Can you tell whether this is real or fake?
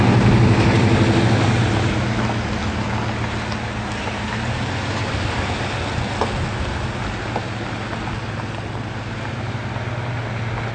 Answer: real